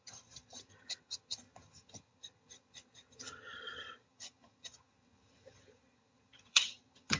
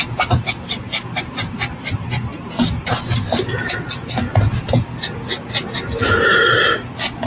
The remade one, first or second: first